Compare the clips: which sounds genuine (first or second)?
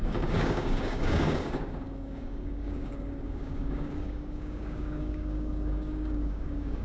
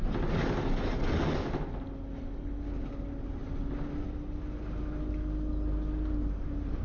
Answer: second